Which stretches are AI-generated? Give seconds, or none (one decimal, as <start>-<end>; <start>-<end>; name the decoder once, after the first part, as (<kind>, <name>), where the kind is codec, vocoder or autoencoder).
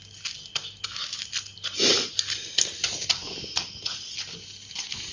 1.9-2.9 (vocoder, BigVGAN v2)